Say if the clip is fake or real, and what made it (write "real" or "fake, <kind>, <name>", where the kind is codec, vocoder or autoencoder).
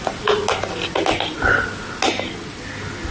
real